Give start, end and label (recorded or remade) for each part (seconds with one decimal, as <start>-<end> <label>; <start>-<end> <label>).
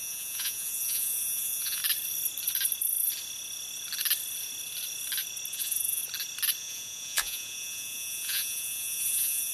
0.0-1.8 remade; 1.8-5.5 recorded; 5.5-6.0 remade; 6.0-6.6 recorded; 6.6-9.5 remade